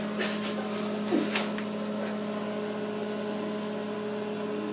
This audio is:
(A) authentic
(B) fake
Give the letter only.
A